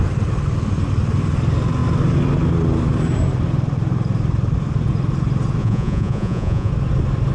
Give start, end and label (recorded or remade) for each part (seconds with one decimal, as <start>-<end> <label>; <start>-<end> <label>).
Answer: 0.0-5.6 recorded; 5.6-6.7 remade; 6.7-7.3 recorded